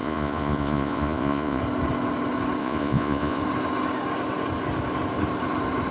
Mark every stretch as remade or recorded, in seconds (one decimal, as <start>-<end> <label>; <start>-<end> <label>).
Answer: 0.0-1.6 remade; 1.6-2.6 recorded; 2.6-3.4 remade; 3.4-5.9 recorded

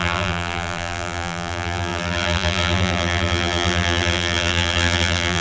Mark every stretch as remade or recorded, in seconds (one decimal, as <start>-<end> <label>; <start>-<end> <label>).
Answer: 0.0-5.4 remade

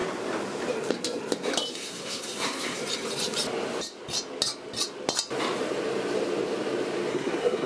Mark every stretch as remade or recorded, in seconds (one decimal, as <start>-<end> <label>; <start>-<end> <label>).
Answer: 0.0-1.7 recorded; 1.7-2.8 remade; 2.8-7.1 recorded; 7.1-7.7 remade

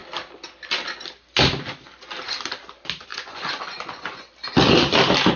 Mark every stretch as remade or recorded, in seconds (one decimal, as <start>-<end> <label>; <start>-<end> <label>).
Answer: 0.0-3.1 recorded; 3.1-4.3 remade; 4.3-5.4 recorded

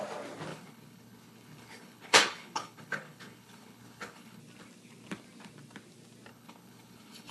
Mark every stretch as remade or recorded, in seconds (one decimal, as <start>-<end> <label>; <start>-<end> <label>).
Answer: 0.0-0.5 recorded; 0.5-4.4 remade; 4.4-6.3 recorded; 6.3-7.3 remade